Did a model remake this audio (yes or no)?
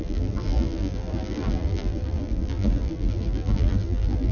yes